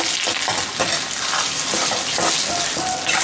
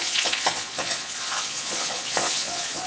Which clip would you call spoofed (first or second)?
second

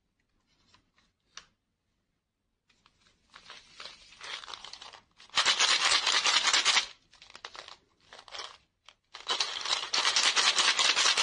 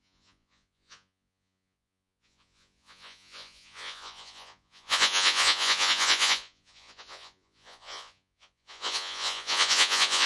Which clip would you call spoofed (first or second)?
second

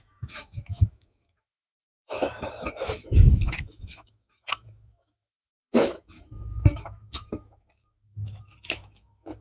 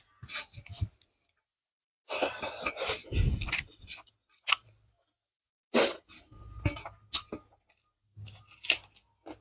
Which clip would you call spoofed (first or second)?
first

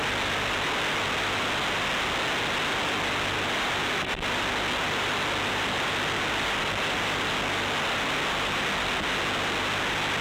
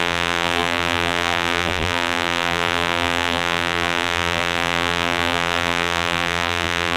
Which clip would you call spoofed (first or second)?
second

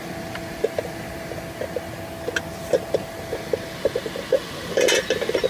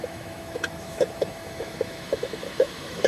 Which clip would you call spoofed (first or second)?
second